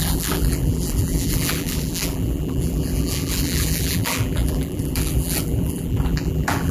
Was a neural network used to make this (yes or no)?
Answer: yes